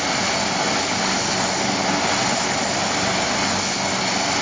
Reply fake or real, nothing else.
real